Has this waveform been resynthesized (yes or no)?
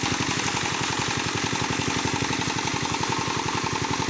no